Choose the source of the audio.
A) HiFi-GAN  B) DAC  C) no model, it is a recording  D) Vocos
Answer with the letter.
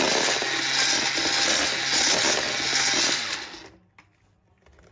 C